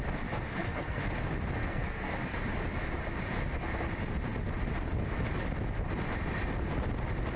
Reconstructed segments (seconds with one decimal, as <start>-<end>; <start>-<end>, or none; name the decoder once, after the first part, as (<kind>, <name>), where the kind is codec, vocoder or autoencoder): 0.5-1.1 (codec, SNAC); 1.6-2.1